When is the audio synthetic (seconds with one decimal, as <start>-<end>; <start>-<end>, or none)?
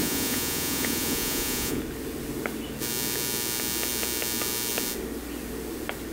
0.0-1.8